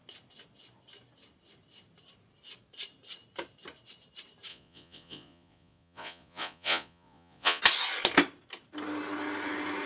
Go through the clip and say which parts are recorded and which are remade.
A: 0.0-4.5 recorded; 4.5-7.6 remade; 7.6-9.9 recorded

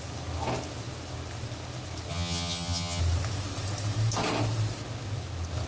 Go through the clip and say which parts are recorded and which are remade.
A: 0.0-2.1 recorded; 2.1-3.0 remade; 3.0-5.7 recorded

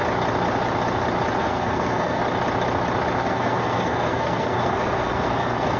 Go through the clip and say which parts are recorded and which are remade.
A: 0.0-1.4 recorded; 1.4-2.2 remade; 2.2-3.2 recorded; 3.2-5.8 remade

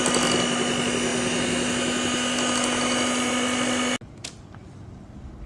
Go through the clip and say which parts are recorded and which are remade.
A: 0.0-5.5 recorded